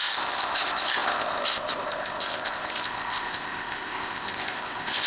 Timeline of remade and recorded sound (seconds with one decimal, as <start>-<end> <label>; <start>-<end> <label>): 0.0-5.1 remade